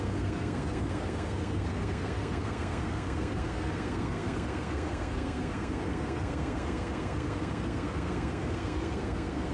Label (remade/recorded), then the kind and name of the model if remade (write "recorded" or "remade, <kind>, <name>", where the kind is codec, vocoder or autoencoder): remade, codec, SNAC